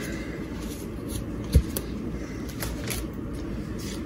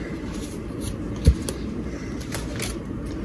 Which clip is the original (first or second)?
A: first